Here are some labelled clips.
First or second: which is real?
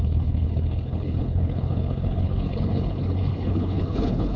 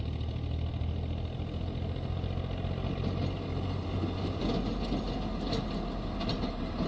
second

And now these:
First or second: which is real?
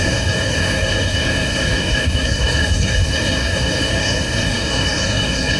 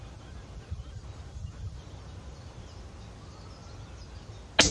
second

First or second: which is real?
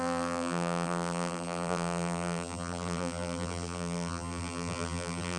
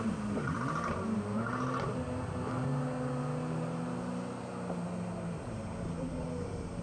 second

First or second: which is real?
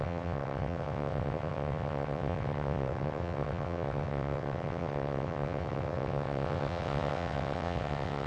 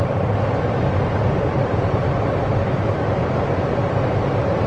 second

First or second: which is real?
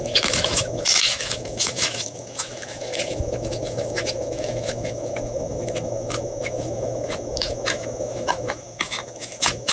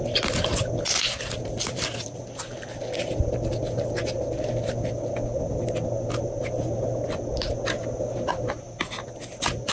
second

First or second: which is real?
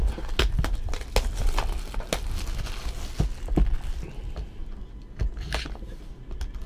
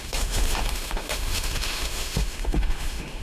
first